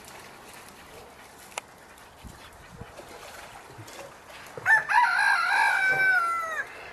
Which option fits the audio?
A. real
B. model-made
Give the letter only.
A